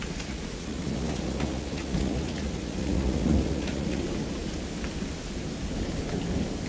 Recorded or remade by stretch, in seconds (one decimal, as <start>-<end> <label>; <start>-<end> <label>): 0.0-4.0 remade; 4.0-6.7 recorded